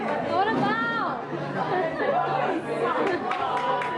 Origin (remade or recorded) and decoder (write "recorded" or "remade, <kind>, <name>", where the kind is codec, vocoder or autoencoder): recorded